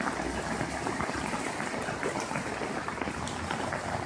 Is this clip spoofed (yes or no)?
no